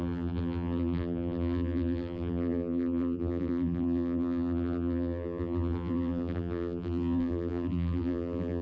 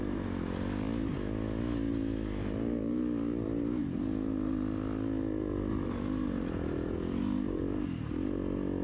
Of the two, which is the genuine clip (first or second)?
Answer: second